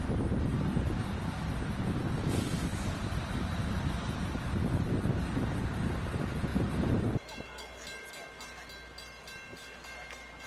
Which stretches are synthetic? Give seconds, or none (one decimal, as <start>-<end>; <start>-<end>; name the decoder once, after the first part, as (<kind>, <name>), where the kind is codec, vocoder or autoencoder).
2.7-4.4 (vocoder, BigVGAN v2); 6.5-8.0